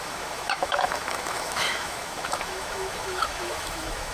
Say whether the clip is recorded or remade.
remade